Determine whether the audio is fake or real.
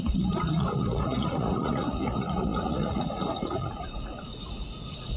fake